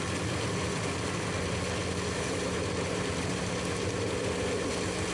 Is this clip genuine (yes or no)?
yes